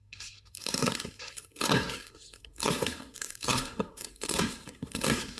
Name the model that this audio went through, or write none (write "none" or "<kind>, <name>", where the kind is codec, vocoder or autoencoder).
codec, SNAC